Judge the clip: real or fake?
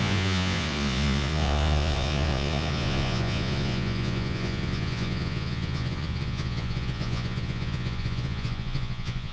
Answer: fake